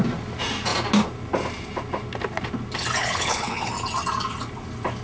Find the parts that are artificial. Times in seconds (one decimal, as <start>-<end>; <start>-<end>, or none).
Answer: 3.0-3.7